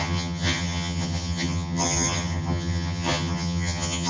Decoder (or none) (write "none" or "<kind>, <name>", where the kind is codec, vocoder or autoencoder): vocoder, HiFi-GAN